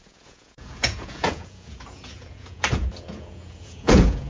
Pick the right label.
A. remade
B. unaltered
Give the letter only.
A